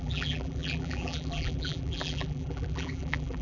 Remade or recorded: remade